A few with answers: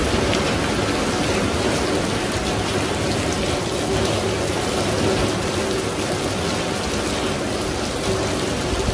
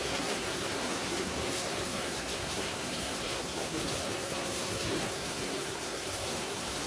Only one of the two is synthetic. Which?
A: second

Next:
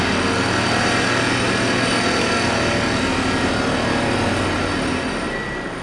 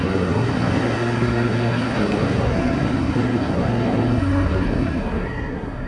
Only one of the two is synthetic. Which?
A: second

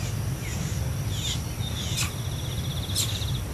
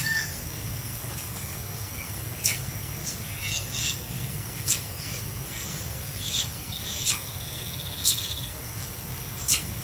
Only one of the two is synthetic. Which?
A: second